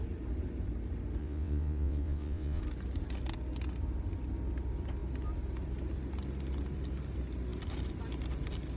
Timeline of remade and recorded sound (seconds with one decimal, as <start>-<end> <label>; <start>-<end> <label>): 0.0-1.2 recorded; 1.2-2.6 remade; 2.6-8.8 recorded